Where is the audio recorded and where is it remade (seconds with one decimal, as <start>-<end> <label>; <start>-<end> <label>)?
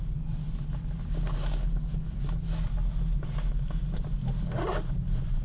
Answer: 0.0-5.4 recorded